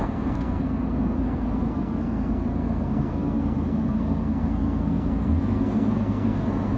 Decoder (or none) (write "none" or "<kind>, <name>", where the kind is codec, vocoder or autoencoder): codec, SNAC